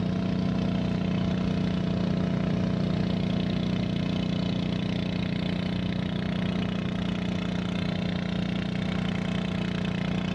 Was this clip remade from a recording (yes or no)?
no